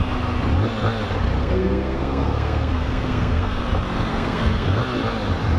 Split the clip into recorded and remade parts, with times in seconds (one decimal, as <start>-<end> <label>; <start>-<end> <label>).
0.0-1.4 recorded; 1.4-3.6 remade; 3.6-4.1 recorded; 4.1-4.8 remade; 4.8-5.6 recorded